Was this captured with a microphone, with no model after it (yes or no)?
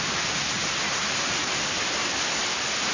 yes